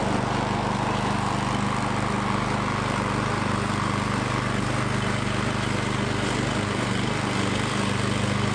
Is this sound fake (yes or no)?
no